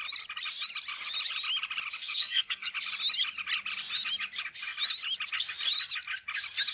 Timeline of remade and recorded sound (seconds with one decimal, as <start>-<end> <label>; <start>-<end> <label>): 0.0-2.0 recorded; 2.0-2.7 remade; 2.7-6.7 recorded